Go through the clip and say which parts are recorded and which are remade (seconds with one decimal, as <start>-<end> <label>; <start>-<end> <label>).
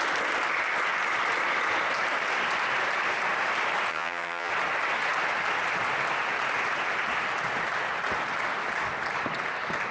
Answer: 0.0-3.9 recorded; 3.9-4.5 remade; 4.5-9.9 recorded